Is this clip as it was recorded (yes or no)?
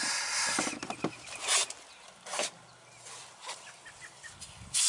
yes